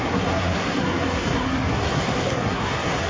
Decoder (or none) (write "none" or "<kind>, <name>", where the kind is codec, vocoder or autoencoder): codec, SNAC